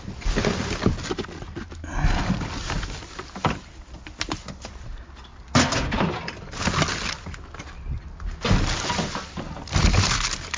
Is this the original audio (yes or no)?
yes